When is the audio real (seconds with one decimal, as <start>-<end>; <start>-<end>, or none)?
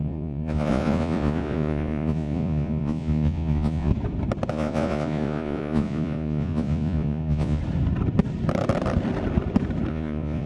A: 3.9-4.5; 7.6-9.9